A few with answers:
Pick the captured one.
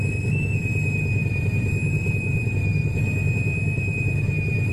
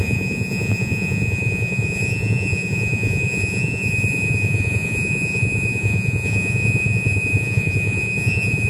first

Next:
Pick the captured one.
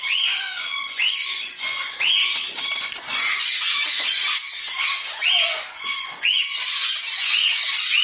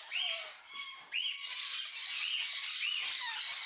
second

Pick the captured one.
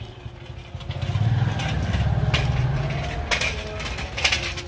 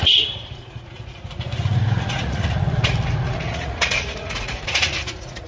first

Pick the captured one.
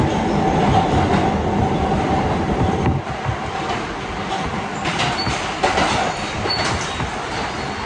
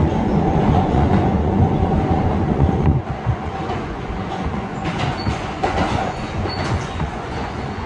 first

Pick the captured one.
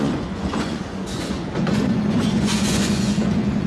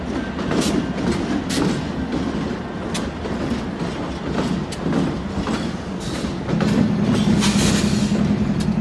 second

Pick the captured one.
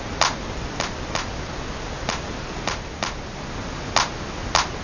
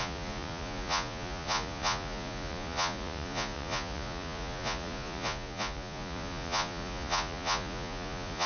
first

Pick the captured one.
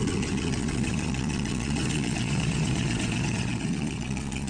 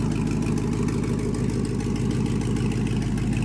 second